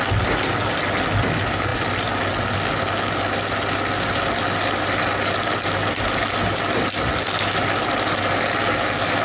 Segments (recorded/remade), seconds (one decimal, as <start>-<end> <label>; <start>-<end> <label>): 0.0-9.2 recorded